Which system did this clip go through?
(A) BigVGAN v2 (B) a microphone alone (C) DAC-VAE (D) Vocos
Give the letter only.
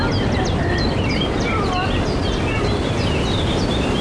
B